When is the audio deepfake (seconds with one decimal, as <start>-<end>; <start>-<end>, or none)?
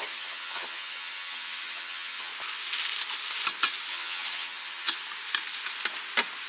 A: 0.0-2.3; 3.9-5.0